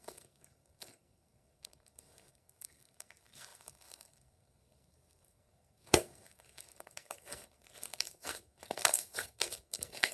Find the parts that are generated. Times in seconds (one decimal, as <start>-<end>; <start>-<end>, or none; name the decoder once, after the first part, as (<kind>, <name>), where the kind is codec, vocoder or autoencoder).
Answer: 0.0-10.1 (codec, SNAC)